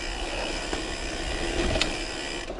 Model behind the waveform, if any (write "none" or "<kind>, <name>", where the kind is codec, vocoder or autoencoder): none